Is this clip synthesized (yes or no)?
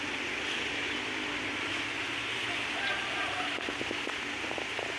no